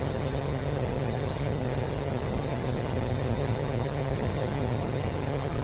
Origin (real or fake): fake